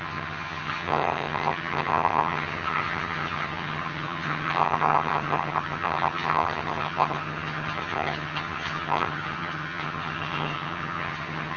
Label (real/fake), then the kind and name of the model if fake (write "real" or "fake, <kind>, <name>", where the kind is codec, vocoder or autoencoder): fake, vocoder, HiFi-GAN